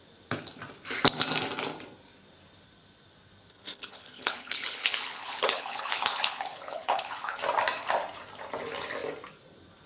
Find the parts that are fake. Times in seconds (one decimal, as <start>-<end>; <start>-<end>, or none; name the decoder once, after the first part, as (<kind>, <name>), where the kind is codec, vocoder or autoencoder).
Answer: 3.5-7.4 (codec, HILCodec)